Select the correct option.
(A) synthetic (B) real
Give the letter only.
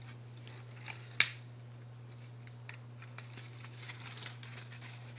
B